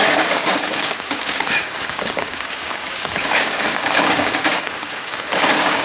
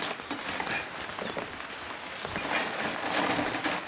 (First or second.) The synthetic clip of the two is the first